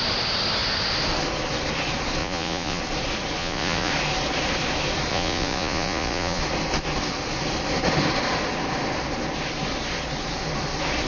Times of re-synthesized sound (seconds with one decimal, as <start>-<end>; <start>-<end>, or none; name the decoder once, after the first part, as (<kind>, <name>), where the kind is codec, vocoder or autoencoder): 2.2-2.8 (vocoder, Vocos); 3.4-3.9; 5.1-6.4